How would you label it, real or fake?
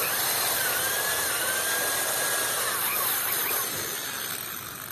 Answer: real